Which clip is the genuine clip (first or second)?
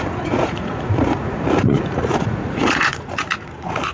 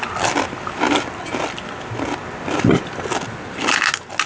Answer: second